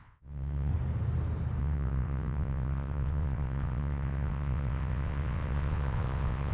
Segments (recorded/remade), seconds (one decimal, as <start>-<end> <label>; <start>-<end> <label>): 0.0-0.7 remade; 0.7-1.6 recorded; 1.6-6.5 remade

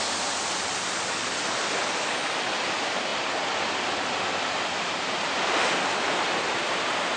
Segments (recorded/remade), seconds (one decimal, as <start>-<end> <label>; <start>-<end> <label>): 0.0-7.2 recorded

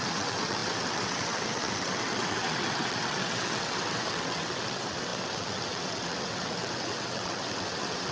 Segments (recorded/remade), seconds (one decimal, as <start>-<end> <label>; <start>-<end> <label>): 0.0-8.1 remade

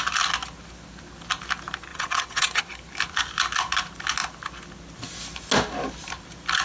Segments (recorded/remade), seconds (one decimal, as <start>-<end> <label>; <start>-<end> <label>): 0.0-1.9 recorded; 1.9-2.6 remade; 2.6-6.6 recorded

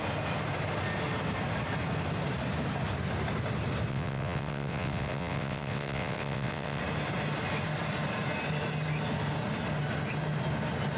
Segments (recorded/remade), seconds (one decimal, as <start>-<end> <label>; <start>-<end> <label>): 0.0-3.9 recorded; 3.9-6.8 remade; 6.8-11.0 recorded

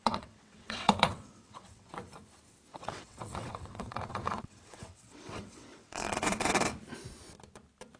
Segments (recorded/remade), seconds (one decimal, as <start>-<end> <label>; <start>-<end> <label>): 0.0-2.1 remade; 2.1-2.7 recorded; 2.7-6.6 remade; 6.6-8.0 recorded

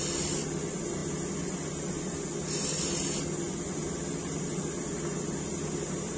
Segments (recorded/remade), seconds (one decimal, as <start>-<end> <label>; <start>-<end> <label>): 0.0-6.2 recorded